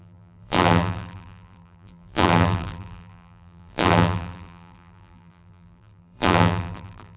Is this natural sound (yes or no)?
no